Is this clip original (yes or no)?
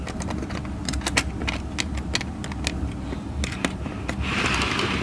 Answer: yes